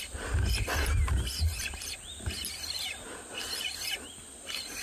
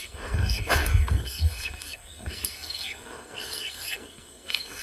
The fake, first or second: second